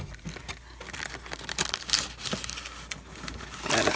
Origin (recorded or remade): recorded